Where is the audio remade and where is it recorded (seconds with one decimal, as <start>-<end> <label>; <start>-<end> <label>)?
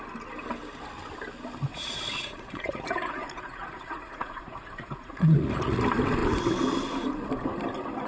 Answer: 0.0-1.7 recorded; 1.7-5.8 remade; 5.8-8.1 recorded